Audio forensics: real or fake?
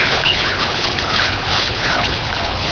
fake